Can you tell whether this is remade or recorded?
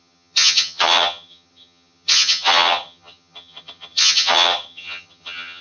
remade